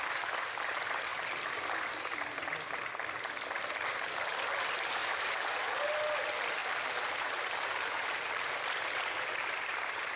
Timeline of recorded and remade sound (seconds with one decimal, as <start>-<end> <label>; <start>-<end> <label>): 0.0-5.0 recorded; 5.0-5.8 remade; 5.8-6.6 recorded; 6.6-10.2 remade